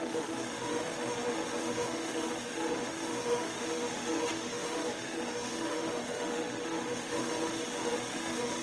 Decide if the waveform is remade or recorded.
remade